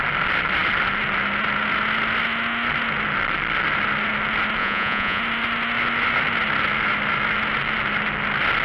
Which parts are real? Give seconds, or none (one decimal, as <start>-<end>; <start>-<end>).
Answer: 0.0-4.6; 5.2-8.6